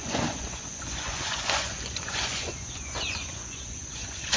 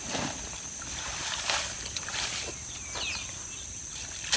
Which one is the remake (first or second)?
first